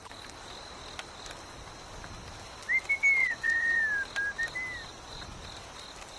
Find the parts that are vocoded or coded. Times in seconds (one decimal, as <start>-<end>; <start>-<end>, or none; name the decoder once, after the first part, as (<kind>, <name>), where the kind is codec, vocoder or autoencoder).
3.2-3.8 (vocoder, Vocos); 4.9-5.4